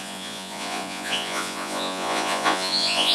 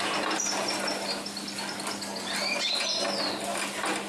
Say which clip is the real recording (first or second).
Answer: second